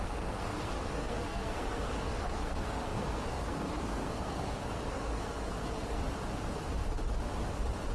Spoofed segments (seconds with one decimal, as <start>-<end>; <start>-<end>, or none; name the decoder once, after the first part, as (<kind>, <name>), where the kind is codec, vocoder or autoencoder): 0.0-6.0 (codec, SNAC)

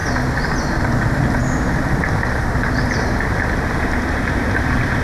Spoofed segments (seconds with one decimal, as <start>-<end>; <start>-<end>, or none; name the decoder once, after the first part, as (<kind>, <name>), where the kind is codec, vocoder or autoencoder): none

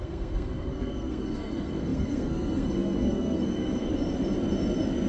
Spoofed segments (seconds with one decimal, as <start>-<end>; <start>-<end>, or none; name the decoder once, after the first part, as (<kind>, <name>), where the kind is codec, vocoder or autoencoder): 0.0-3.9 (codec, SNAC)

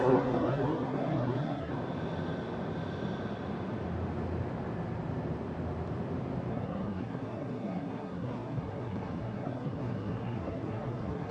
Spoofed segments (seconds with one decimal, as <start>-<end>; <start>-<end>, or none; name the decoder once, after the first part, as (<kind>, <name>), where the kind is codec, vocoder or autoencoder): 0.0-1.7 (codec, SNAC); 6.5-11.3